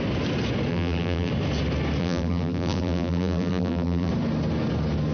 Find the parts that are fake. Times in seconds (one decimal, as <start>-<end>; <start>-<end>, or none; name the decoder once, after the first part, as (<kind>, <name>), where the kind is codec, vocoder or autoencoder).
0.7-1.3 (vocoder, BigVGAN v2); 2.0-4.1

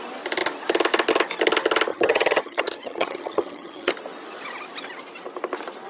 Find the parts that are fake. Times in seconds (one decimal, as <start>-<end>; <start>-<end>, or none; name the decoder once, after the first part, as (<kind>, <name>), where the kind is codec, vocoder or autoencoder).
1.9-3.9 (vocoder, HiFi-GAN)

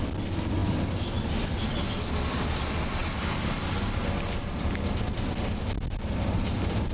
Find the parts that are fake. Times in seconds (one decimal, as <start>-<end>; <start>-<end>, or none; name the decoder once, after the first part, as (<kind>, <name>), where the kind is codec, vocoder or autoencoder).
none

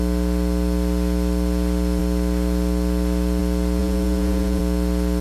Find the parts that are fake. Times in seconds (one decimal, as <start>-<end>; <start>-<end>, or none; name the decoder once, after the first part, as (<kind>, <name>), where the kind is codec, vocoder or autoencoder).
3.8-4.6 (vocoder, Vocos)

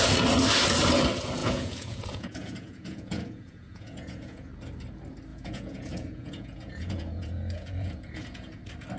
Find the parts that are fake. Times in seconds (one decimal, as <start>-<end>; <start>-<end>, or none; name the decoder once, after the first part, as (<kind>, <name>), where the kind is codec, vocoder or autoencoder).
1.4-4.5 (vocoder, Vocos); 5.3-8.6

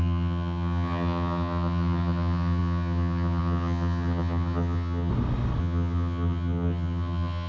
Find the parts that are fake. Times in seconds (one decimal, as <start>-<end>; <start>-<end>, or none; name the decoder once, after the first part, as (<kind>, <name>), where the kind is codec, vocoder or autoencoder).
0.0-5.1 (vocoder, HiFi-GAN); 5.6-7.5

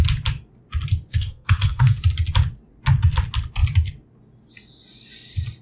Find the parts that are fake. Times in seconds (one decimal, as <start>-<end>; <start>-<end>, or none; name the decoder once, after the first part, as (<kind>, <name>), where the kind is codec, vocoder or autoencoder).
1.1-2.0 (codec, SNAC)

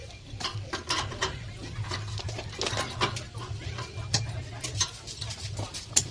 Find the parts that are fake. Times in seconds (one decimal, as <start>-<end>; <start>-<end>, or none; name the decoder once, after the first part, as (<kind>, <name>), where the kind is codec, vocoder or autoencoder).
none